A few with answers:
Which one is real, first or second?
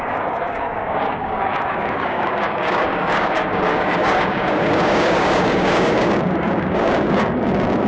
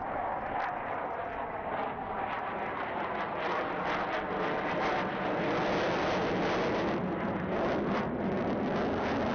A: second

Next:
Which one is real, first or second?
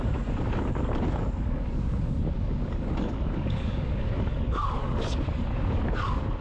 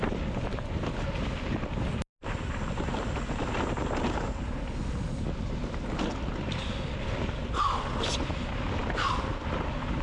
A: second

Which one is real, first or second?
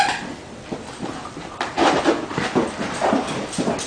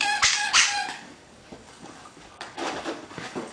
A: first